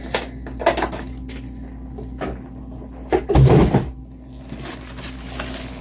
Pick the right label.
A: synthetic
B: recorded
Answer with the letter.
B